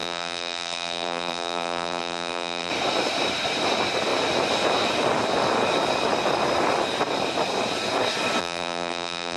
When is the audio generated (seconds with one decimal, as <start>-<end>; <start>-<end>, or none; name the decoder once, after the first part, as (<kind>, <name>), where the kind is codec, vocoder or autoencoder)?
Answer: 0.0-2.7 (vocoder, BigVGAN v2); 8.4-9.4